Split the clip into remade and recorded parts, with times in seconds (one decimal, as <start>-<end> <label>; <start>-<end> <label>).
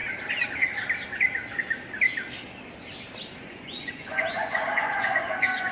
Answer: 0.0-3.4 recorded; 3.4-5.7 remade